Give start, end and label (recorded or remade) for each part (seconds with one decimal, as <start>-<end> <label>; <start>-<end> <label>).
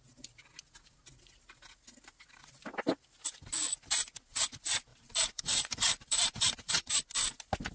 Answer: 0.0-4.9 recorded; 4.9-6.9 remade; 6.9-7.7 recorded